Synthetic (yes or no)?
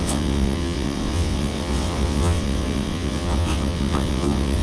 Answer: yes